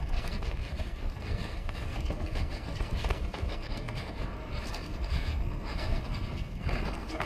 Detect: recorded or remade remade